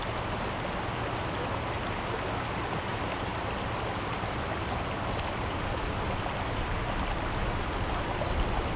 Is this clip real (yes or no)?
yes